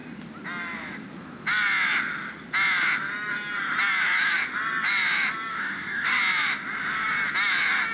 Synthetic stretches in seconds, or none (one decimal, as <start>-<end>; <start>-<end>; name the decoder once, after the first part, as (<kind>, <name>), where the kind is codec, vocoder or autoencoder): 5.5-6.2 (codec, DAC)